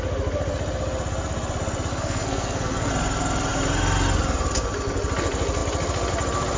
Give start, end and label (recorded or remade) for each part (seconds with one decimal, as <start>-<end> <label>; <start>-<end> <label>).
0.0-1.9 recorded; 1.9-2.9 remade; 2.9-6.6 recorded